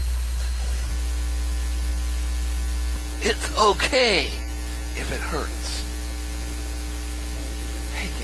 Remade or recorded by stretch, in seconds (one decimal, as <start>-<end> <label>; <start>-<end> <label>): 0.0-0.9 remade; 0.9-8.2 recorded